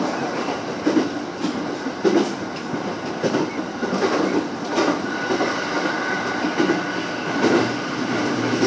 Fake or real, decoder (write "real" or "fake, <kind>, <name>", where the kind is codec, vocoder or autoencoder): real